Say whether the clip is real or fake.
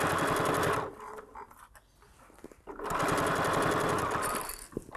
real